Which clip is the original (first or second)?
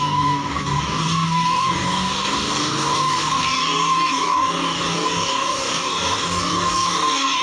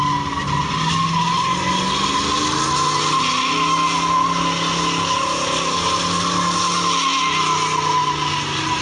second